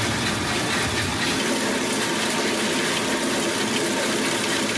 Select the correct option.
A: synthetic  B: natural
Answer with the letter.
B